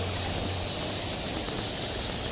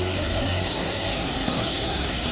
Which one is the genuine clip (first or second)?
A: first